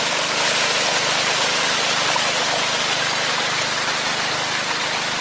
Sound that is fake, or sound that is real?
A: real